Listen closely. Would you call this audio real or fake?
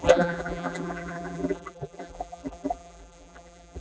fake